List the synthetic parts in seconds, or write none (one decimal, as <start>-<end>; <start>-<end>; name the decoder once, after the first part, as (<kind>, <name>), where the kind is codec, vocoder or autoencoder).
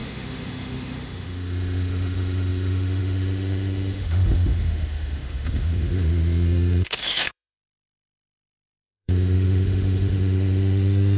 0.0-11.2 (autoencoder, DAC-VAE)